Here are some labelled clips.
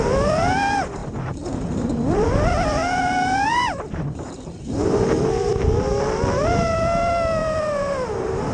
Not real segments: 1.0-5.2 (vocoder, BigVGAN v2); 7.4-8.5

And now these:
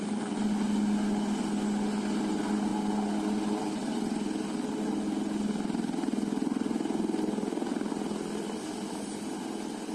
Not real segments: none

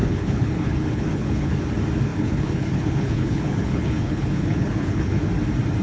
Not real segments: 0.0-1.5 (codec, HILCodec); 2.1-5.3

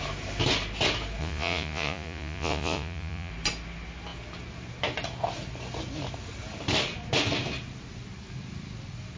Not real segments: 1.2-3.3 (vocoder, Vocos)

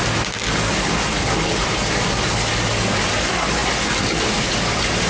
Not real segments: none

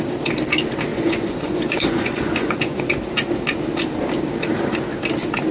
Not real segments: 0.9-2.9 (vocoder, Vocos)

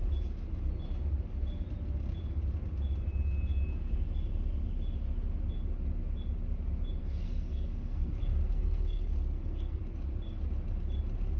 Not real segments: 7.0-9.8 (codec, SNAC)